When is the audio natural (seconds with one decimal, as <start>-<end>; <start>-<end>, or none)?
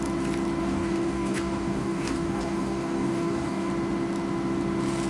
0.0-0.6; 3.7-5.1